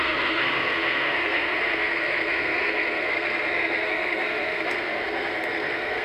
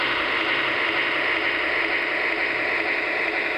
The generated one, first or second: first